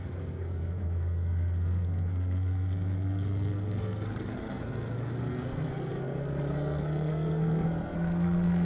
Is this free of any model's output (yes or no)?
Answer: no